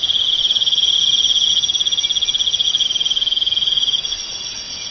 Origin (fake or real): real